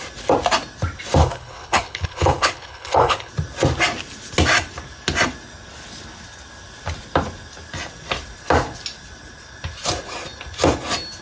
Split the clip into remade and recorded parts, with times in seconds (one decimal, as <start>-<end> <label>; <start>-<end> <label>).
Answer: 0.0-1.2 recorded; 1.2-3.3 remade; 3.3-11.2 recorded